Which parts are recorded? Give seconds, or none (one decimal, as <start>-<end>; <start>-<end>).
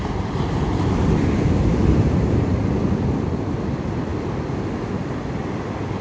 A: 0.0-6.0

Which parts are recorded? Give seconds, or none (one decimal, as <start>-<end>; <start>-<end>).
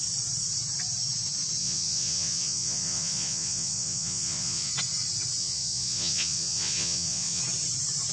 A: 0.0-1.6; 4.7-5.4; 7.4-8.1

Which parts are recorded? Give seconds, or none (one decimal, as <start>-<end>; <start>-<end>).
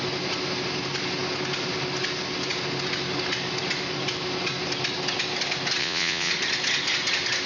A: 0.0-5.8; 6.3-7.5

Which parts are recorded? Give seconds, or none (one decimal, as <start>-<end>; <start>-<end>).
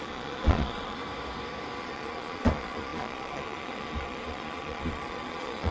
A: 1.0-1.8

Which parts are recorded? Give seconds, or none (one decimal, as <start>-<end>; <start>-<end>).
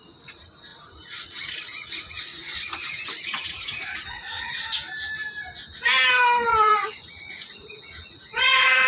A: 0.0-0.7; 4.5-6.5